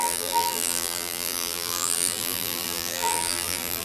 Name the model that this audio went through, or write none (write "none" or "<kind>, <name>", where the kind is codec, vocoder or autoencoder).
vocoder, BigVGAN v2